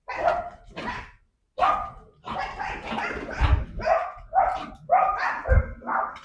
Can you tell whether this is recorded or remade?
recorded